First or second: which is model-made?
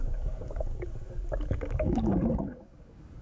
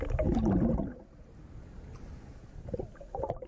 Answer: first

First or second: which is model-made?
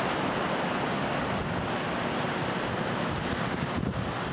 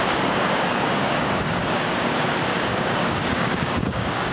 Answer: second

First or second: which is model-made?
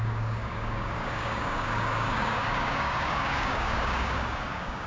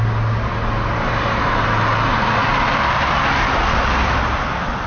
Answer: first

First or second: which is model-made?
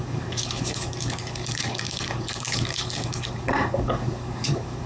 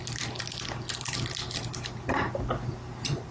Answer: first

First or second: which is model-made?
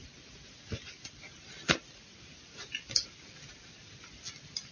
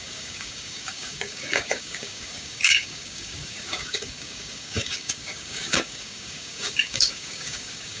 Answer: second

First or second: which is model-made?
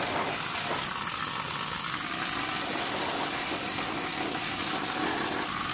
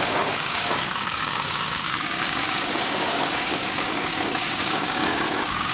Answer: second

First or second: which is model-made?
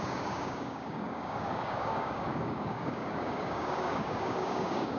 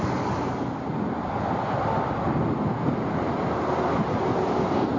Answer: first